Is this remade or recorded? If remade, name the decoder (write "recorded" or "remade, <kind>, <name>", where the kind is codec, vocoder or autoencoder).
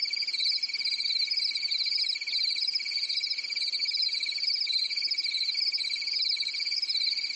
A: recorded